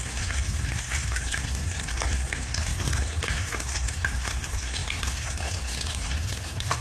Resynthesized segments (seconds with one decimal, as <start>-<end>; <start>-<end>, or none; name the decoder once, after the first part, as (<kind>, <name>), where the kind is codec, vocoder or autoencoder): 0.0-6.8 (codec, SNAC)